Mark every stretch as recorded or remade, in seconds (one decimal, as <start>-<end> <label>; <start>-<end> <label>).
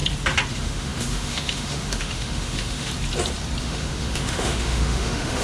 0.0-0.5 recorded; 0.5-2.9 remade; 2.9-3.6 recorded; 3.6-5.4 remade